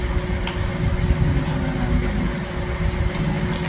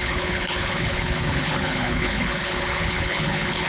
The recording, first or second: first